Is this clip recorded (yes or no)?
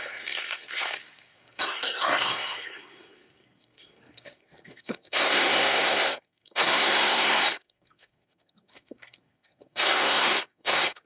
no